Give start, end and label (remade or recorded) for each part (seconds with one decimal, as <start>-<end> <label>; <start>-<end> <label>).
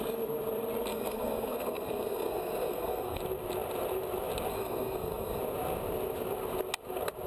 0.0-0.9 recorded; 0.9-3.2 remade; 3.2-4.5 recorded; 4.5-5.4 remade; 5.4-7.3 recorded